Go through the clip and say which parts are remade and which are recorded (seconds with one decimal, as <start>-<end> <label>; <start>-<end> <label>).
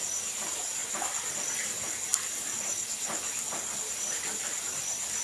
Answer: 0.0-5.2 recorded